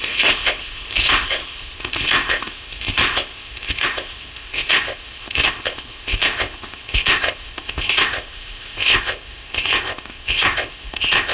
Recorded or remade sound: remade